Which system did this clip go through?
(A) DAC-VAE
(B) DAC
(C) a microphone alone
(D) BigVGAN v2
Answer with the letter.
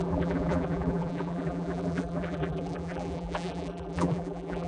D